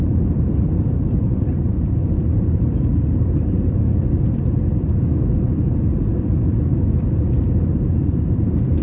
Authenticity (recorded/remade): remade